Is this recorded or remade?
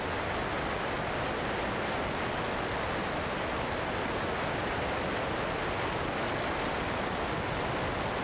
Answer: recorded